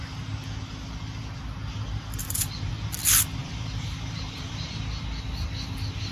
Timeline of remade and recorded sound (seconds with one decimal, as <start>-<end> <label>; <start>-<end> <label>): 0.0-2.2 recorded; 2.2-2.7 remade; 2.7-3.4 recorded; 3.4-4.7 remade; 4.7-6.1 recorded